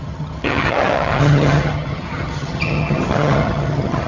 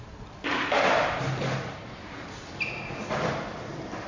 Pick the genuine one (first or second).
second